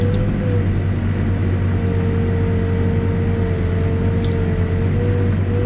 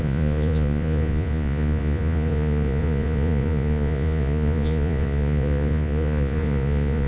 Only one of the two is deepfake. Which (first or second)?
second